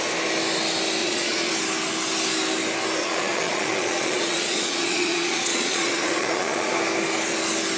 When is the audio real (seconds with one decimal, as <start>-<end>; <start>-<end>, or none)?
0.0-1.0; 1.5-3.0; 6.7-7.8